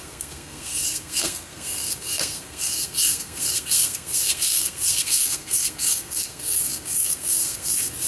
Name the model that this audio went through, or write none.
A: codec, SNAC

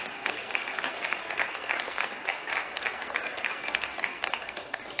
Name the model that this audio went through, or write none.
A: codec, SNAC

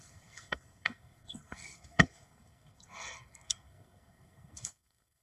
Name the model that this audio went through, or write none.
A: codec, SNAC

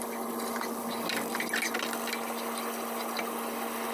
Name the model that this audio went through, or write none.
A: none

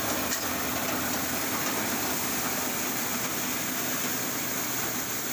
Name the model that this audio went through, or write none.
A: none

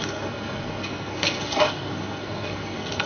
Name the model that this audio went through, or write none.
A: codec, SNAC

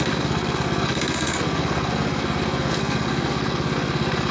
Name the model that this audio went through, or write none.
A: codec, SNAC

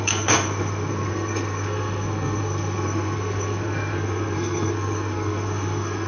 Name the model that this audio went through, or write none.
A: codec, SNAC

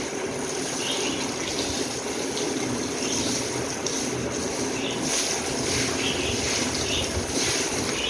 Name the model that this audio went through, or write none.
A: none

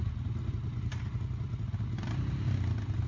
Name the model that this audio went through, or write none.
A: none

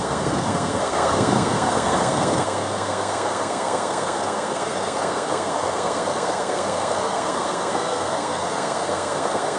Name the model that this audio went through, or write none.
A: codec, SNAC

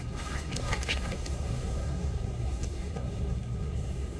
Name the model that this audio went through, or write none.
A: codec, SNAC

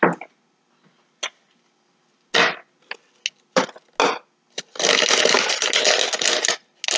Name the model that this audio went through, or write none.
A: none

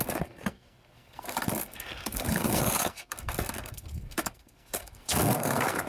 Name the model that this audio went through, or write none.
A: codec, SNAC